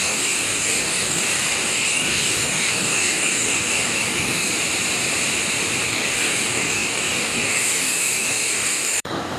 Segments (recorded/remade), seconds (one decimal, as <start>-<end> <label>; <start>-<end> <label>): 0.0-4.5 remade; 4.5-5.9 recorded; 5.9-9.4 remade